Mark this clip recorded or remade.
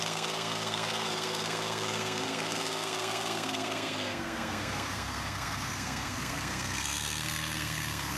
remade